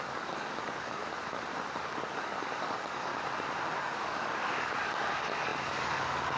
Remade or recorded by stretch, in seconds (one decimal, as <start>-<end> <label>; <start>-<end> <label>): 0.0-1.0 remade; 1.0-1.8 recorded; 1.8-3.1 remade; 3.1-3.7 recorded; 3.7-6.4 remade